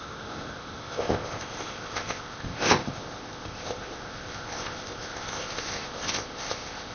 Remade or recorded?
remade